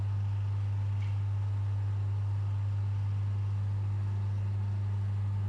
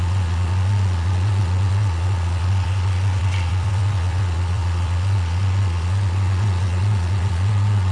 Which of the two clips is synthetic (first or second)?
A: second